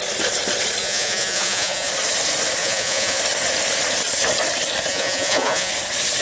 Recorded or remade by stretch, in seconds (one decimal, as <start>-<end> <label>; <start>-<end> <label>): 0.0-0.8 recorded; 0.8-1.9 remade; 1.9-2.6 recorded; 2.6-3.2 remade; 3.2-4.9 recorded; 4.9-5.7 remade; 5.7-6.2 recorded